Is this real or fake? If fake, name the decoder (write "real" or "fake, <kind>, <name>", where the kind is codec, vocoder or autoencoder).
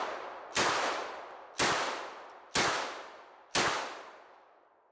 real